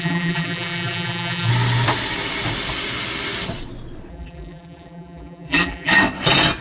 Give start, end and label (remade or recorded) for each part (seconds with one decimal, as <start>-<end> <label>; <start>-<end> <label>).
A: 0.0-1.5 remade; 1.5-4.1 recorded; 4.1-5.9 remade; 5.9-6.6 recorded